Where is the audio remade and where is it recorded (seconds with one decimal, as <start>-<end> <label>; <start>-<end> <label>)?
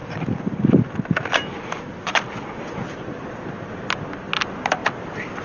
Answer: 0.0-5.4 recorded